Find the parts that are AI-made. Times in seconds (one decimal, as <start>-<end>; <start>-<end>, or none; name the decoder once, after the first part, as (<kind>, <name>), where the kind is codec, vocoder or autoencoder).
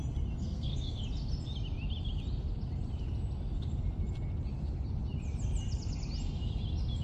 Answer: 0.4-1.0 (codec, SNAC)